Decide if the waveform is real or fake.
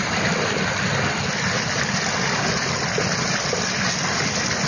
real